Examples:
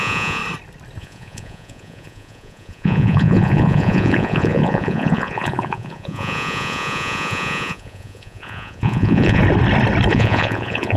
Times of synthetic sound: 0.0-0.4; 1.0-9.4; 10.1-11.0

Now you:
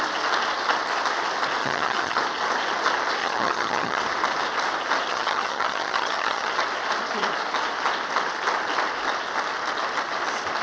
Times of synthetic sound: 1.6-2.2; 3.2-4.0; 5.1-6.5

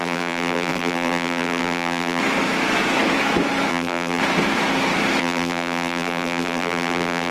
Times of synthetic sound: 0.0-2.2; 3.7-4.2; 5.2-7.3

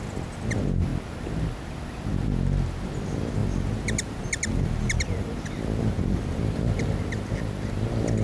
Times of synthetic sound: none

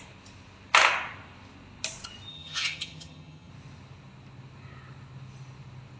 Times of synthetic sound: 2.3-3.5